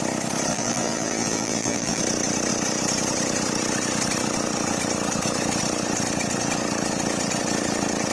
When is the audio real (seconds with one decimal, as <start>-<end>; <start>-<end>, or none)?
0.0-0.5; 2.0-8.1